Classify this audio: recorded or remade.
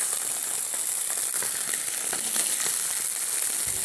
recorded